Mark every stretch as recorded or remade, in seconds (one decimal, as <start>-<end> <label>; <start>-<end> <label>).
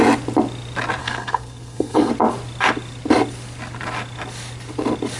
0.0-1.0 recorded; 1.0-2.1 remade; 2.1-5.2 recorded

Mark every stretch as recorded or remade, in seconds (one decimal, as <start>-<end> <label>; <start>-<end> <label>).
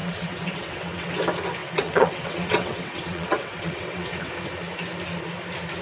0.0-1.1 remade; 1.1-1.6 recorded; 1.6-4.3 remade; 4.3-5.8 recorded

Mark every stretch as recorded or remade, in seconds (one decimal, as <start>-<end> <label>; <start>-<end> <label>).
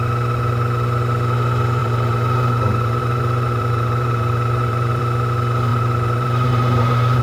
0.0-1.8 recorded; 1.8-5.0 remade; 5.0-5.7 recorded; 5.7-7.2 remade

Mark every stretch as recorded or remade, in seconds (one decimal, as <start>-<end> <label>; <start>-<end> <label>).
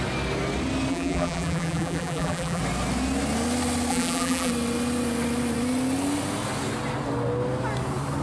0.0-0.9 recorded; 0.9-2.6 remade; 2.6-3.9 recorded; 3.9-4.5 remade; 4.5-8.2 recorded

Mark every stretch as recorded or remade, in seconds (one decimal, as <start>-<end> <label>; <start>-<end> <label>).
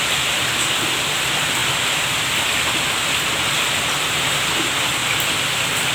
0.0-5.9 recorded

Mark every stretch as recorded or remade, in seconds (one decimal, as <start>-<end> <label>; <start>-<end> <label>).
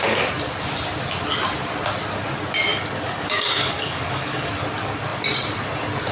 0.0-2.7 recorded; 2.7-4.5 remade; 4.5-6.1 recorded